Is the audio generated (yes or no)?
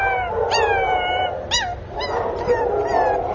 no